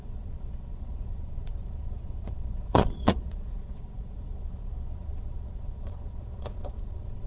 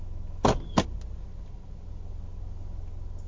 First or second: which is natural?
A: second